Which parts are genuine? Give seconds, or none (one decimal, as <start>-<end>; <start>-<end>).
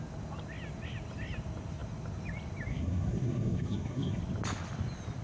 0.0-2.7; 4.2-5.2